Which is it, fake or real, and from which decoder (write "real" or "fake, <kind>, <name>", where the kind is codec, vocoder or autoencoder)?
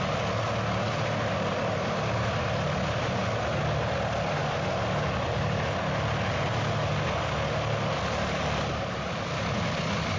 real